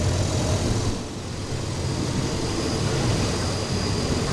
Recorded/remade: recorded